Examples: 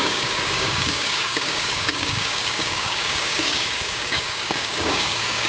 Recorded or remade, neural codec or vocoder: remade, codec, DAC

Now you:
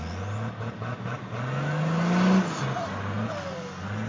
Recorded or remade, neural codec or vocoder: recorded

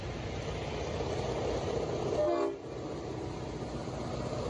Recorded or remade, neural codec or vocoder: recorded